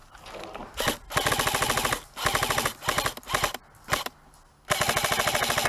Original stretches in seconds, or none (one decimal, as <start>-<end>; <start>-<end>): 0.0-5.7